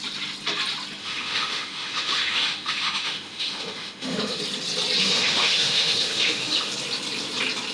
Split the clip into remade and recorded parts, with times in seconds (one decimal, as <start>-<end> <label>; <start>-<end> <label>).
0.0-1.0 recorded; 1.0-4.4 remade; 4.4-5.0 recorded; 5.0-6.7 remade; 6.7-7.7 recorded